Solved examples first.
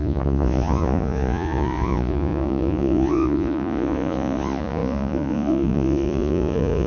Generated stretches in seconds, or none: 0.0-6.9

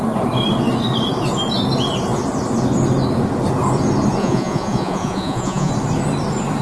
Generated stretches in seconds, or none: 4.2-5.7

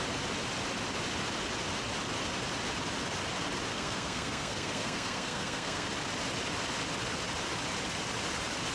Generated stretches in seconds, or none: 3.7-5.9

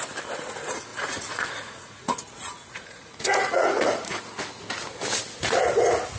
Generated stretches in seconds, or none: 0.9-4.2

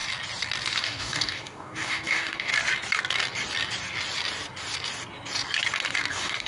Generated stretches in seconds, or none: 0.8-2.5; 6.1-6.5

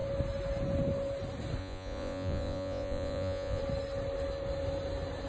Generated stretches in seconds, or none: 1.6-3.6

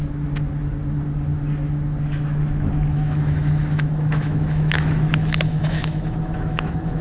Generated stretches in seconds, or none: 2.9-7.0

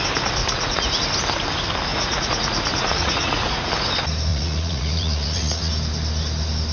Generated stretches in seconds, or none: 0.4-1.0; 1.9-3.7; 4.3-5.7